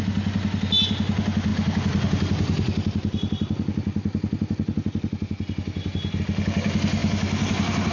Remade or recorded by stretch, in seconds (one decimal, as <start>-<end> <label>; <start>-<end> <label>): 0.0-7.9 recorded